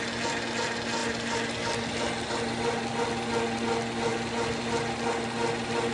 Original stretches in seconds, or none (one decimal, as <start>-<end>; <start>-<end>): 0.0-5.9